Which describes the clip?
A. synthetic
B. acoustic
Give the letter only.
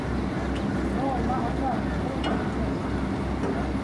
B